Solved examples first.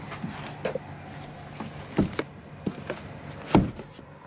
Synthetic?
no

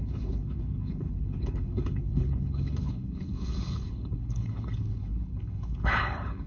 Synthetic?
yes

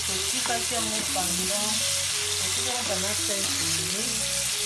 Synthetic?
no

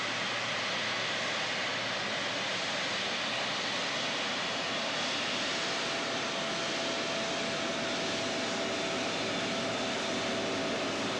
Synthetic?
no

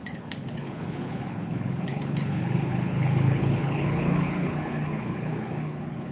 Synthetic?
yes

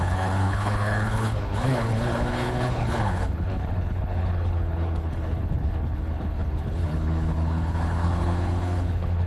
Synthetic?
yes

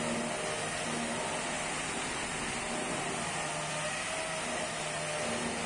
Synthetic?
no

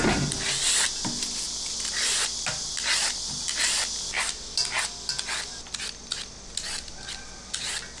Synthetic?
no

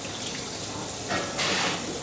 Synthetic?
no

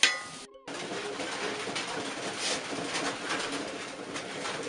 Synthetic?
no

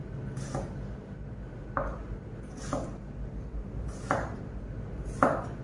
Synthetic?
no